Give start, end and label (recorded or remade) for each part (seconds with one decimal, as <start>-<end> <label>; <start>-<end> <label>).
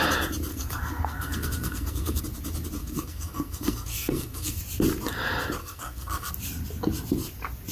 0.0-0.5 recorded; 0.5-2.2 remade; 2.2-2.8 recorded; 2.8-4.6 remade; 4.6-5.6 recorded; 5.6-6.3 remade; 6.3-7.7 recorded